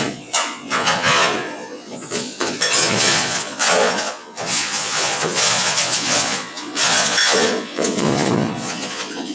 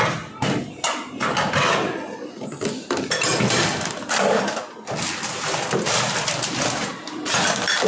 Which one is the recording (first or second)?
second